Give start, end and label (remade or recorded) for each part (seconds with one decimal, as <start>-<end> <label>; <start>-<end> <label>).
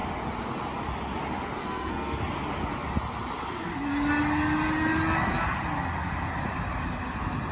0.0-1.6 recorded; 1.6-2.2 remade; 2.2-7.5 recorded